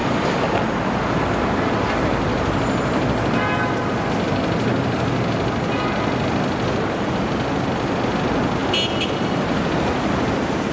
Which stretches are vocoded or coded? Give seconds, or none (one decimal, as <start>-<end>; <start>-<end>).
none